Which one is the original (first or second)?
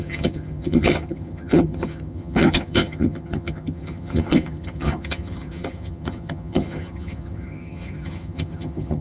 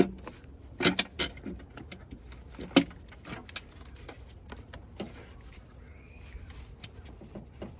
second